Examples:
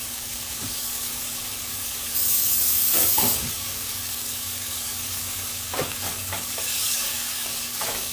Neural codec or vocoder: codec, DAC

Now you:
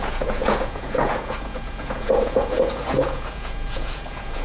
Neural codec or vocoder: vocoder, Vocos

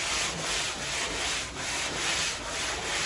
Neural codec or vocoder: none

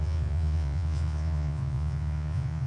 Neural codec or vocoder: vocoder, Vocos